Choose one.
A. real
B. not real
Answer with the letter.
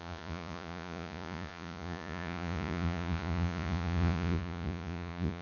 B